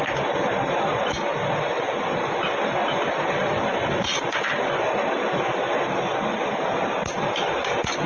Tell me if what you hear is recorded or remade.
recorded